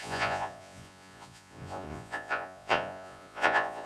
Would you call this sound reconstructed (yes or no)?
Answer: yes